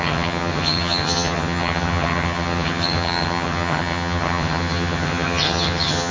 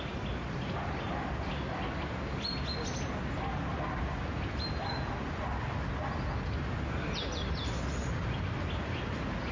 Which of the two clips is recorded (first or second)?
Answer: second